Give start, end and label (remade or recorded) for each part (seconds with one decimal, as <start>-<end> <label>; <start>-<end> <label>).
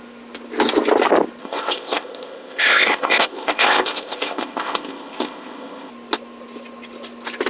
0.0-1.4 recorded; 1.4-5.9 remade; 5.9-7.5 recorded